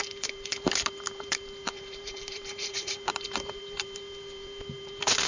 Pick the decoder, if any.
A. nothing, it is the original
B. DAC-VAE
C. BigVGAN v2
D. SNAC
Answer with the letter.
C